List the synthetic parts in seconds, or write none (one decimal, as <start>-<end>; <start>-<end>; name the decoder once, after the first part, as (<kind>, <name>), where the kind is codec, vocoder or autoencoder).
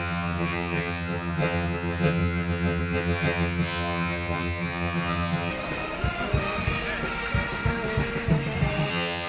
0.0-5.5 (vocoder, HiFi-GAN); 8.9-9.3